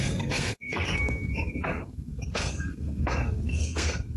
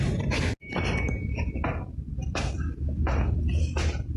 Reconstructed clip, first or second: first